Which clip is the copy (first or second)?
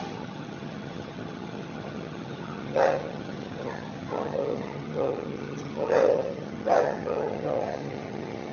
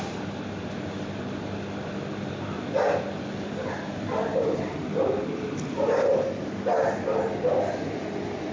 first